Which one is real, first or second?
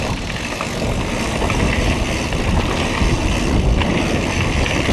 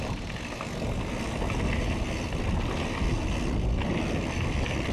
second